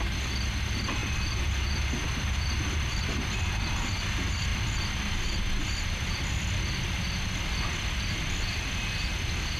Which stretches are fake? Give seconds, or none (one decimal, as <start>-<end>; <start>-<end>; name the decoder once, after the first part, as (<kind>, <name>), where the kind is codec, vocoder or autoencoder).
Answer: none